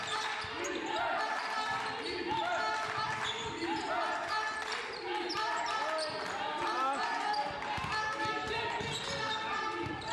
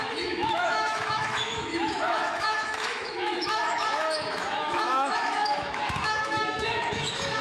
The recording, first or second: first